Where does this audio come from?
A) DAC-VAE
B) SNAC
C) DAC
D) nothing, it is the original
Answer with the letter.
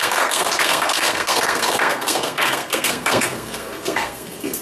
B